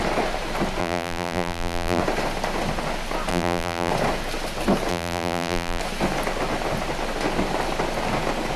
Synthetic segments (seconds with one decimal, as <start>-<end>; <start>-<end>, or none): 0.8-2.0; 3.3-3.9; 4.9-5.8